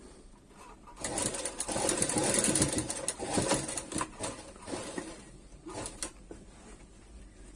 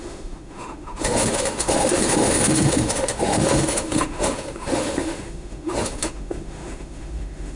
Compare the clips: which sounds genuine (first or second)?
first